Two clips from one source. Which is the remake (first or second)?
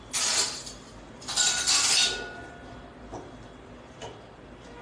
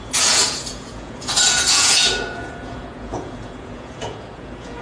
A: second